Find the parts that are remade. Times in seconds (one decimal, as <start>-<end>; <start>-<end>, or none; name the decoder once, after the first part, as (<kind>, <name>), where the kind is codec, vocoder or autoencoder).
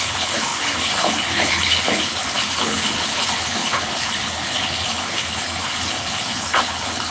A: 0.0-7.1 (codec, HILCodec)